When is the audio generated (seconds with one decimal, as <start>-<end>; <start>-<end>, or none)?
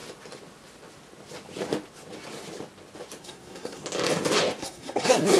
3.2-3.8; 4.6-5.4